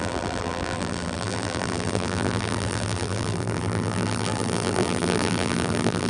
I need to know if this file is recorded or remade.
remade